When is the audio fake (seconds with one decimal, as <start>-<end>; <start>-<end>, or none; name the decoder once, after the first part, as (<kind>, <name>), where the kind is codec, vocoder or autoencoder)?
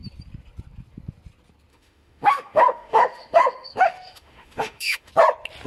1.7-5.1 (autoencoder, DAC-VAE)